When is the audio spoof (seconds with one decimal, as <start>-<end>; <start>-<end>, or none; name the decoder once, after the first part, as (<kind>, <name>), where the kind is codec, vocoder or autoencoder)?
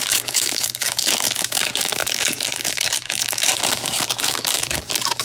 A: 0.0-5.2 (codec, DAC)